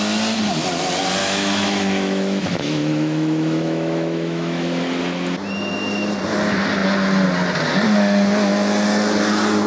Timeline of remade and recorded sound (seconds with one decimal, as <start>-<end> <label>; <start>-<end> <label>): 0.0-1.2 recorded; 1.2-5.0 remade; 5.0-9.7 recorded